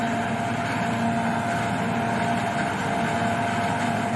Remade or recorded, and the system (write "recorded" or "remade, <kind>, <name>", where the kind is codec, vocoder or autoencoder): recorded